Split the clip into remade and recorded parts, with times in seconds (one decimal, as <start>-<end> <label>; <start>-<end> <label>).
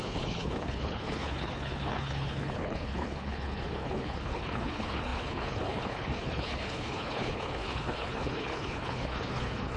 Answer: 0.0-9.8 remade